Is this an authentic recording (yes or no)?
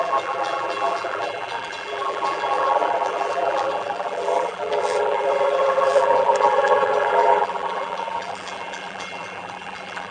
no